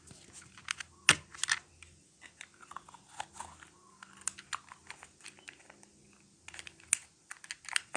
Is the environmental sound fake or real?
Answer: real